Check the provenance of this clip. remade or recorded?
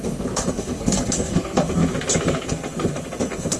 remade